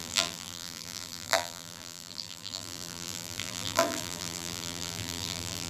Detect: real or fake fake